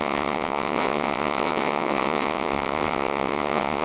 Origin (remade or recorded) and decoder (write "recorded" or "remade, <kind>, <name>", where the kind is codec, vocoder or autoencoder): remade, vocoder, WaveNeXt